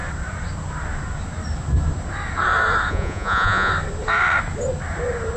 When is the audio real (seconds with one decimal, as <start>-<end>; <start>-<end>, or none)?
0.0-2.9; 3.7-5.4